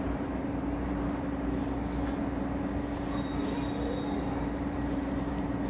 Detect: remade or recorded recorded